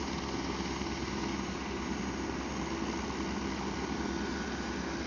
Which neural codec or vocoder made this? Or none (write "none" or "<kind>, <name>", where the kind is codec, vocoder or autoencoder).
none